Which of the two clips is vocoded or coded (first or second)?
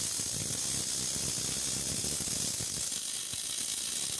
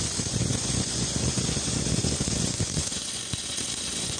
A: second